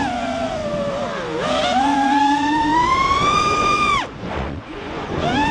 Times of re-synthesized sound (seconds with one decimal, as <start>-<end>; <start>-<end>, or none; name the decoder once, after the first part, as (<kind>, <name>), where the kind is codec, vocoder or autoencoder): 0.0-0.6 (vocoder, Vocos); 1.8-5.5